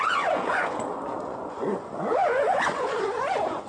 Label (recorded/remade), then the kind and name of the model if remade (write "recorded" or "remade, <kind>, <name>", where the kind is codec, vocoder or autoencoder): remade, vocoder, Vocos